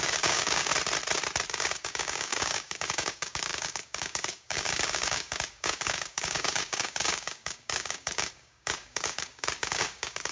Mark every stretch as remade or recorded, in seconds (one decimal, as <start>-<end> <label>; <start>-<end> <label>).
0.0-0.7 remade; 0.7-1.5 recorded; 1.5-10.3 remade